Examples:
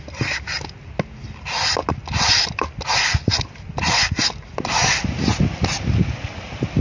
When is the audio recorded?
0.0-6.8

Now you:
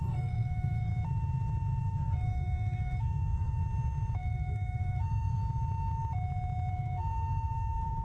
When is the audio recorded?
0.9-1.8; 3.6-4.2; 5.4-6.7

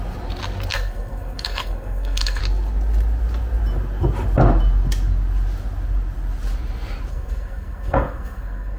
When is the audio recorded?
0.0-0.7; 2.4-7.1